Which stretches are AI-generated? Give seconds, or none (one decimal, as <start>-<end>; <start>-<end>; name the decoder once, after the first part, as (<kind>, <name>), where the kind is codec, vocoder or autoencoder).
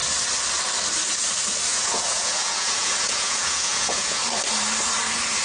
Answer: 1.7-4.2 (vocoder, Vocos)